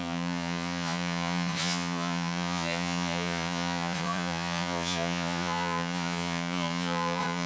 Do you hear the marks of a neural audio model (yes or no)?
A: yes